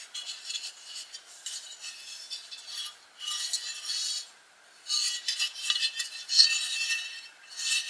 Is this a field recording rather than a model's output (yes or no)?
yes